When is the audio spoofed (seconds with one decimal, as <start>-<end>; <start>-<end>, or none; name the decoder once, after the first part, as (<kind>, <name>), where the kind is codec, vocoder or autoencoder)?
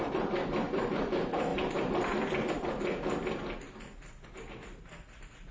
0.0-1.5 (vocoder, BigVGAN v2); 4.8-5.5